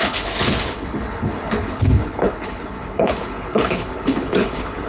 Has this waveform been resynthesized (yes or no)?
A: yes